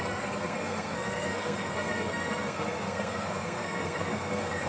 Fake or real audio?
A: fake